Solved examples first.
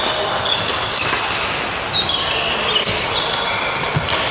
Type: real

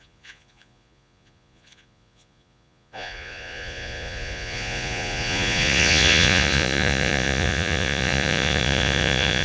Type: fake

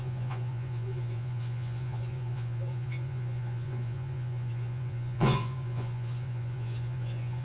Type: fake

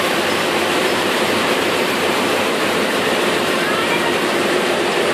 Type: fake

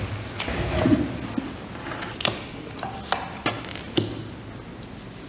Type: real